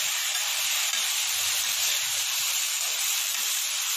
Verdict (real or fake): fake